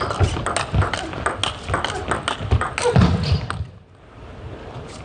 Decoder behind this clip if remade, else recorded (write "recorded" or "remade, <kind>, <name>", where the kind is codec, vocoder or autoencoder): recorded